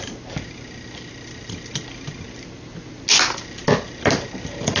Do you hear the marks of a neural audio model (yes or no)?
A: no